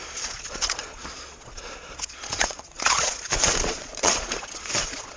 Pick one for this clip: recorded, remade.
remade